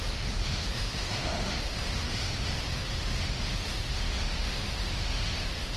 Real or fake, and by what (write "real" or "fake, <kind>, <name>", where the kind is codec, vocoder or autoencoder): fake, autoencoder, DAC-VAE